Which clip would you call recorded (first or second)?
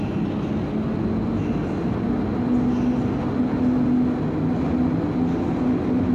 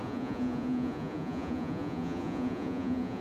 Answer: first